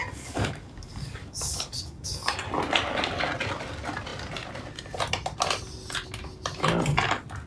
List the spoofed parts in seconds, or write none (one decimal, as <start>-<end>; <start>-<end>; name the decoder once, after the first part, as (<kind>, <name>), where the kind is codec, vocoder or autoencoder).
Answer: 0.0-2.3 (codec, DAC)